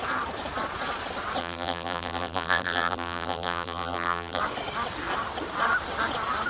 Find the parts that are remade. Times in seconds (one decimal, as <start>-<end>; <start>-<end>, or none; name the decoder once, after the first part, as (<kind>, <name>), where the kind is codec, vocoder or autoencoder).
1.4-4.4 (vocoder, BigVGAN v2)